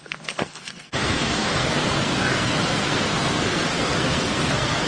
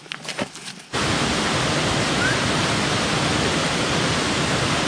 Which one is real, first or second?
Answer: second